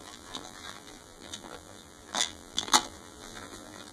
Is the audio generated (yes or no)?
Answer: yes